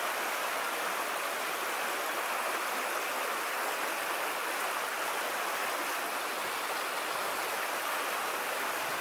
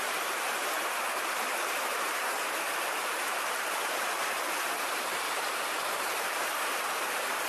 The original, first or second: first